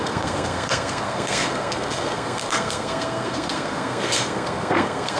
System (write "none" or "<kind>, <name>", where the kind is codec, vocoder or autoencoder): codec, SNAC